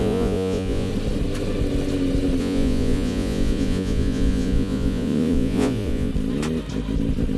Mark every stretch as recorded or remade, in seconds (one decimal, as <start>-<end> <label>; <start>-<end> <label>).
0.0-0.9 remade; 0.9-2.4 recorded; 2.4-6.1 remade; 6.1-7.4 recorded

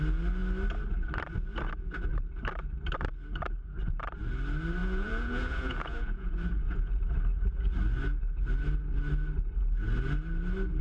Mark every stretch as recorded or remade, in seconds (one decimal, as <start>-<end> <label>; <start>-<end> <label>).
0.0-4.8 recorded; 4.8-6.9 remade; 6.9-10.8 recorded

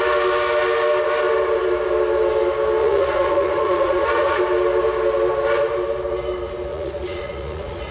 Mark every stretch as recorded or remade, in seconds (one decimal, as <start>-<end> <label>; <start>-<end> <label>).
0.0-2.8 recorded; 2.8-4.4 remade; 4.4-6.7 recorded; 6.7-7.9 remade

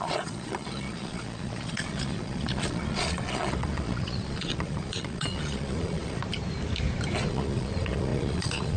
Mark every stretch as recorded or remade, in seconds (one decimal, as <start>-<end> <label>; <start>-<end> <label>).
0.0-6.2 remade; 6.2-7.3 recorded; 7.3-8.8 remade

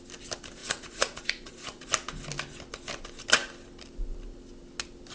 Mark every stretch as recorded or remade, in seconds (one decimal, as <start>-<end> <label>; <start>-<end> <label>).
0.0-0.6 recorded; 0.6-1.9 remade; 1.9-5.1 recorded